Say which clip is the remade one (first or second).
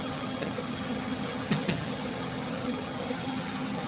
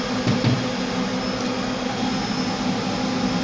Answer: first